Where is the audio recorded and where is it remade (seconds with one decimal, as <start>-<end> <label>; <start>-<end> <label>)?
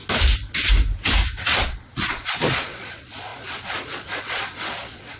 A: 0.0-1.6 recorded; 1.6-5.2 remade